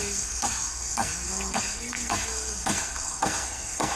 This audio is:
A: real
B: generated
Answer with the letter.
B